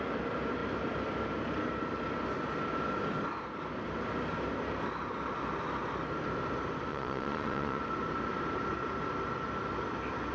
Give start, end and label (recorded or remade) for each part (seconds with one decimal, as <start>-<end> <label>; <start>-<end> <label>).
0.0-6.9 recorded; 6.9-7.8 remade; 7.8-10.3 recorded